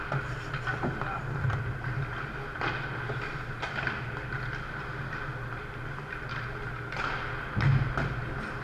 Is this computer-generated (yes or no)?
no